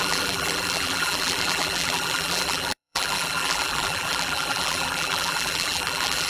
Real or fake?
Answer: fake